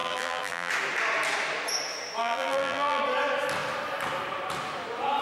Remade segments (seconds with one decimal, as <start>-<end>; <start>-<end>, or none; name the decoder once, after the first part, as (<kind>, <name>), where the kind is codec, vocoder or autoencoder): 0.0-0.7 (vocoder, BigVGAN v2); 2.2-3.0